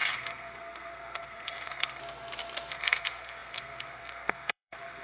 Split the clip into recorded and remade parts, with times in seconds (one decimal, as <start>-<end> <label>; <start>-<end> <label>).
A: 0.0-2.0 remade; 2.0-2.7 recorded; 2.7-5.0 remade